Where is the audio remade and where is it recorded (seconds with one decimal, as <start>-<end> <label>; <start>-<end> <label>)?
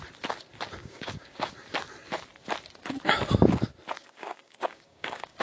0.0-0.8 recorded; 0.8-1.5 remade; 1.5-4.0 recorded; 4.0-5.4 remade